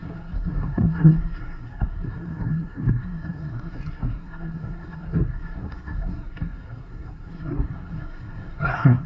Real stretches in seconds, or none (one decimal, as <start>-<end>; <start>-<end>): none